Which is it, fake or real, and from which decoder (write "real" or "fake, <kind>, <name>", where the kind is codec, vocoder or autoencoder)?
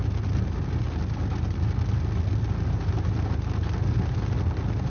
real